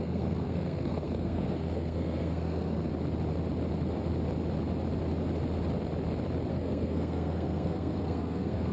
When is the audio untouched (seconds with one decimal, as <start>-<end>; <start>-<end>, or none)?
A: 2.9-6.5